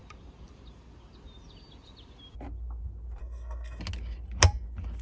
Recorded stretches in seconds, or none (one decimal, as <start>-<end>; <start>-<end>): 0.0-3.2; 3.8-5.0